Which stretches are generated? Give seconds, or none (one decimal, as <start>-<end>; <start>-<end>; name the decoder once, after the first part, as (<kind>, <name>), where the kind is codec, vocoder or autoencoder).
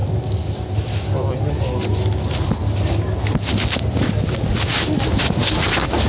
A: none